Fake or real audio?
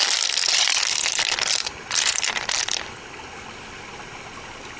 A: fake